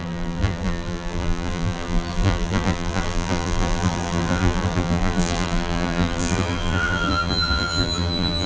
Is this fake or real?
fake